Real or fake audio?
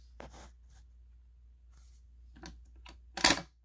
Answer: real